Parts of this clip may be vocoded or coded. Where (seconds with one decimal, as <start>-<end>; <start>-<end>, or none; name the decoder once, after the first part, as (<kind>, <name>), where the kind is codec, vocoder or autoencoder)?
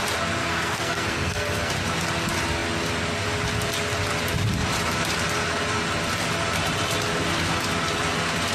0.4-1.7 (codec, SNAC)